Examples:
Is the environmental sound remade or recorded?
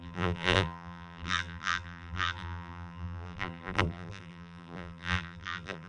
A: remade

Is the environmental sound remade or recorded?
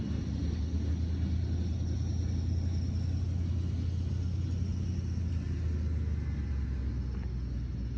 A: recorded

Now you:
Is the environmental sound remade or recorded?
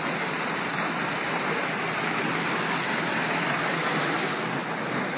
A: recorded